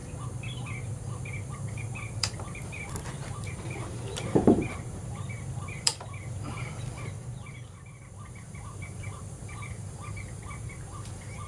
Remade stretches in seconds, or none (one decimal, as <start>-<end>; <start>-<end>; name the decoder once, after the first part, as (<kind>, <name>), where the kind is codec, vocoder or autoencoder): 1.5-11.5 (vocoder, BigVGAN v2)